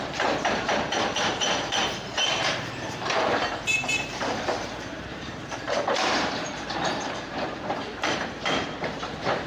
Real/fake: fake